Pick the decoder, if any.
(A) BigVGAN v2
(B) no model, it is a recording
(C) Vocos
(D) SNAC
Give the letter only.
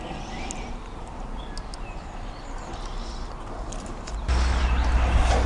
B